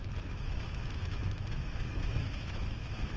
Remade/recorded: remade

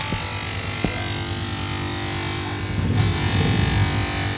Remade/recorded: recorded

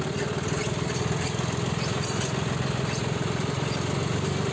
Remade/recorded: recorded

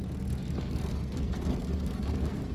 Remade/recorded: remade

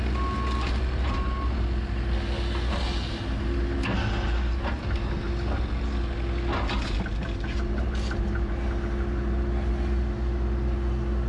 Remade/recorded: recorded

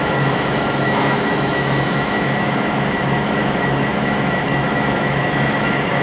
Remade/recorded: remade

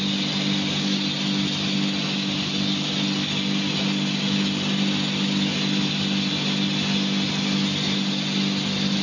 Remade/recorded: recorded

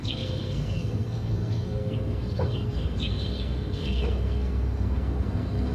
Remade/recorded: remade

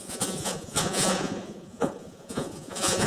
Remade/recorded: remade